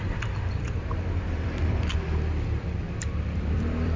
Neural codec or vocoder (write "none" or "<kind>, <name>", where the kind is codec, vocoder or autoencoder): vocoder, BigVGAN v2